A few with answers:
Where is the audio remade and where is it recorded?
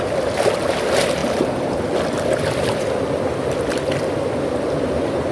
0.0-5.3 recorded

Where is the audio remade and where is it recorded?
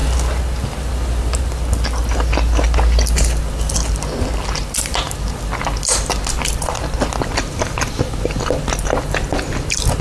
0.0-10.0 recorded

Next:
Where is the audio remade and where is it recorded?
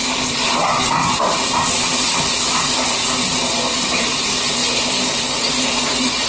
0.0-6.3 recorded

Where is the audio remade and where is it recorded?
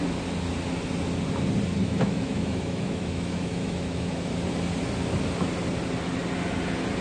0.0-1.8 recorded; 1.8-4.2 remade; 4.2-7.0 recorded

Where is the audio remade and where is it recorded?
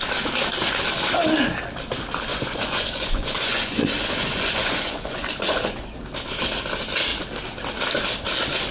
0.0-2.3 recorded; 2.3-6.0 remade; 6.0-8.7 recorded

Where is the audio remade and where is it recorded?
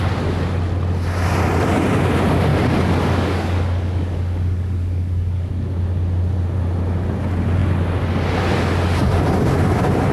0.0-2.5 recorded; 2.5-5.5 remade; 5.5-10.1 recorded